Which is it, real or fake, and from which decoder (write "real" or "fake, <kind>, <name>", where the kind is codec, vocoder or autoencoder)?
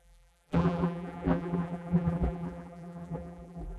fake, vocoder, BigVGAN v2